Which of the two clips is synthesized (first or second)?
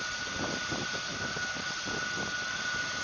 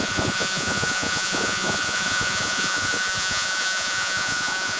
second